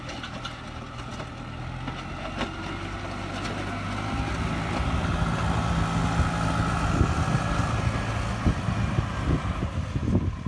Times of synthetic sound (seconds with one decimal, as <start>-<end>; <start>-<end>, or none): none